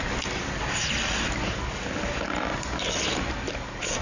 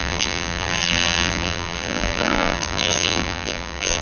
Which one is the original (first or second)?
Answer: first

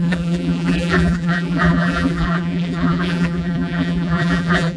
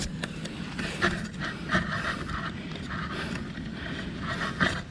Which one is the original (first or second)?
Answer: second